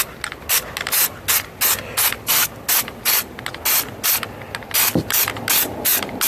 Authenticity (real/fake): real